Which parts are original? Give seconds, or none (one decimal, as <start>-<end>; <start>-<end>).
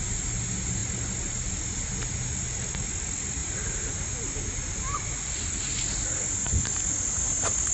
0.0-7.7